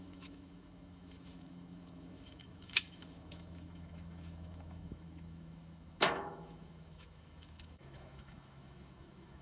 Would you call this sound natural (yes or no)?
no